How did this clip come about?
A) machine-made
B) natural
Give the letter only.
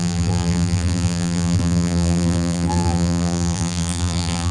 A